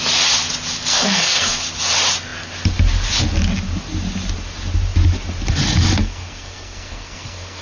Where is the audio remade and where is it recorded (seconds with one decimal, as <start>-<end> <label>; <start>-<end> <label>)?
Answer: 0.0-0.8 recorded; 0.8-1.6 remade; 1.6-6.0 recorded; 6.0-7.6 remade